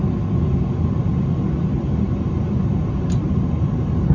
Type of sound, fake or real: real